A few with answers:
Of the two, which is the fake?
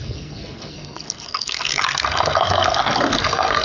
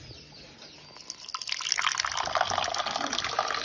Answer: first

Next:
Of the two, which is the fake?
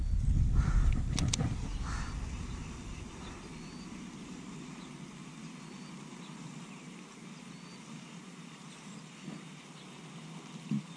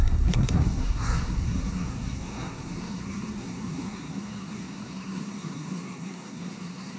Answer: second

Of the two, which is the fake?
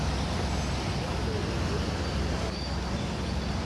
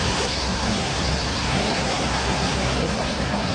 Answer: second